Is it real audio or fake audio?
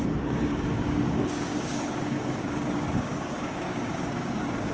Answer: fake